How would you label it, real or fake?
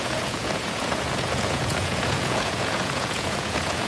fake